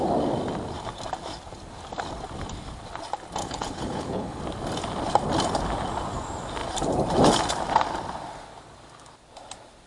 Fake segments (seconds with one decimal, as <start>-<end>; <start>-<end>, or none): 3.4-4.4